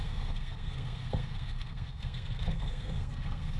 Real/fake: fake